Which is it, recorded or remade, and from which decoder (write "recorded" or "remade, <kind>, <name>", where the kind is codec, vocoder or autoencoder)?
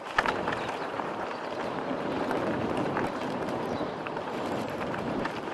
remade, vocoder, BigVGAN v2